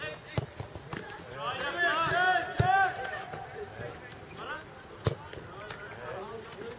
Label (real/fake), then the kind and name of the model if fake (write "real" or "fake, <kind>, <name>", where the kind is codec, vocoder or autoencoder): real